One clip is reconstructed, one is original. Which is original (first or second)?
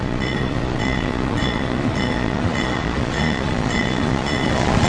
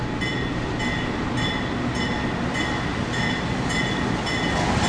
second